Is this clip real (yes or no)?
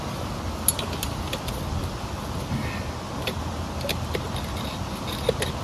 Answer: yes